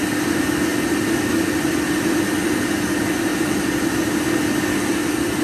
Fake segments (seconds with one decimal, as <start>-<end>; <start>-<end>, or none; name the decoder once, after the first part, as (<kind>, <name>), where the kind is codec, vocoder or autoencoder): 3.3-3.9 (vocoder, BigVGAN v2)